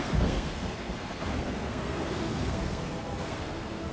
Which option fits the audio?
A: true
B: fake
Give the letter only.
B